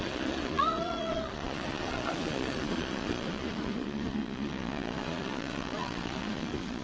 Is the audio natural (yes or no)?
no